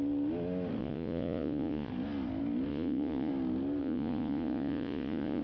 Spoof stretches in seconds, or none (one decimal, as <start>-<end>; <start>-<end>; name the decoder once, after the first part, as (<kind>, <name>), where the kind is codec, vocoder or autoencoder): 0.8-1.9 (vocoder, Vocos); 2.7-3.3; 3.8-5.4